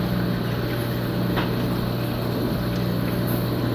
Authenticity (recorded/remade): recorded